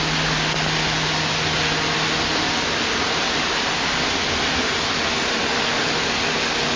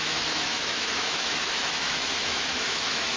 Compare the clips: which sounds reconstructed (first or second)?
second